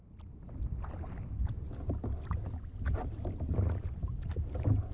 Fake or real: real